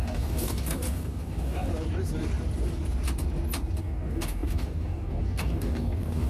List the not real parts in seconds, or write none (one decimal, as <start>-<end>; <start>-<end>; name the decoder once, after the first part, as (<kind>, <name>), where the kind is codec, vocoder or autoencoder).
0.0-1.7 (codec, DAC); 3.8-6.3

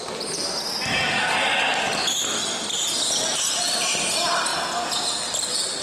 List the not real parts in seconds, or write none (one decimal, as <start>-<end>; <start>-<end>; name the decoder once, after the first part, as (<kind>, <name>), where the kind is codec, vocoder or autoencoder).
4.5-5.0 (vocoder, Vocos)